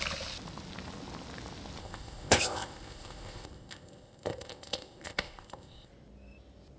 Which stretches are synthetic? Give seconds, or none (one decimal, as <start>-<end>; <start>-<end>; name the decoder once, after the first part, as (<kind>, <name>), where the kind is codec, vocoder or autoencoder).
1.8-5.9 (codec, ZipCodec)

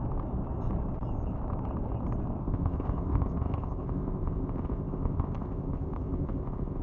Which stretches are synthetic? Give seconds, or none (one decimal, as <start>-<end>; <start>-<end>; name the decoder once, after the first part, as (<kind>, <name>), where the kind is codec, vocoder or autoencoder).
2.4-6.8 (codec, ZipCodec)